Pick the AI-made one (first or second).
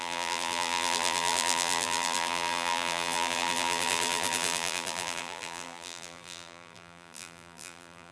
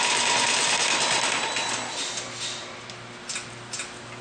first